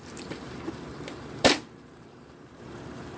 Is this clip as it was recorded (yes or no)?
no